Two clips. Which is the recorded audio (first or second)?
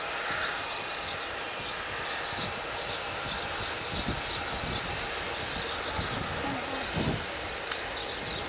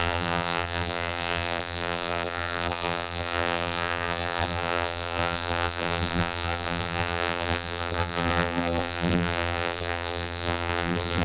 first